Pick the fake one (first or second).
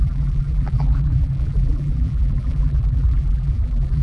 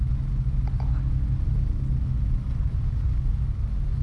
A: first